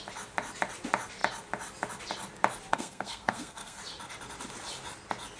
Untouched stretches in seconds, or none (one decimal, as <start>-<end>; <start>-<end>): 0.0-2.7; 3.8-5.4